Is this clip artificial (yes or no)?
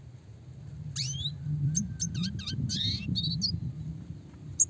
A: no